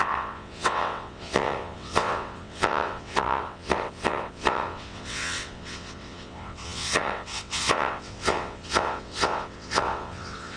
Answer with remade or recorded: remade